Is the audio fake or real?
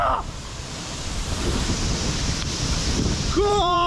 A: fake